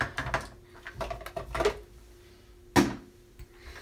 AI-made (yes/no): no